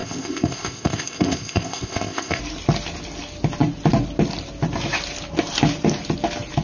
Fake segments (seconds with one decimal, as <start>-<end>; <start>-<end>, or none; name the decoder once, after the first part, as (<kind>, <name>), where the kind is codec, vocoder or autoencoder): 0.0-2.4 (codec, ZipCodec)